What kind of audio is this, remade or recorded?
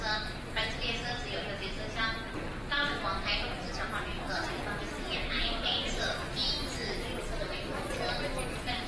recorded